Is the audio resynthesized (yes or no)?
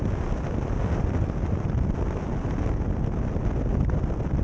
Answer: no